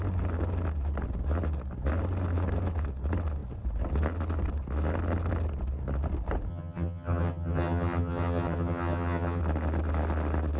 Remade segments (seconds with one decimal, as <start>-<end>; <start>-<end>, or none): 6.5-9.4